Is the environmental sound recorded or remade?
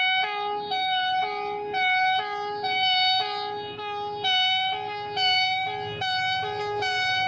recorded